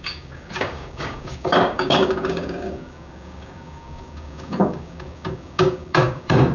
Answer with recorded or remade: remade